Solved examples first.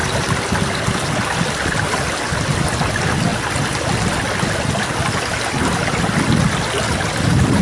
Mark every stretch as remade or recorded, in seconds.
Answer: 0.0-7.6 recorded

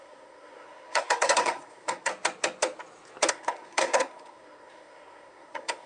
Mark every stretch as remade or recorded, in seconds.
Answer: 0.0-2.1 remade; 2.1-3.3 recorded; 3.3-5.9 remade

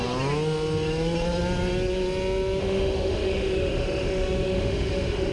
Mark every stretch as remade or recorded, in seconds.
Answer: 0.0-2.6 recorded; 2.6-5.3 remade

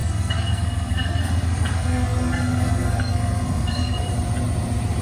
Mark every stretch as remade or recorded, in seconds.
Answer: 0.0-4.1 remade; 4.1-5.0 recorded

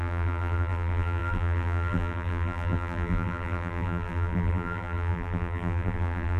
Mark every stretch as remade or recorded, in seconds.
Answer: 0.0-6.4 remade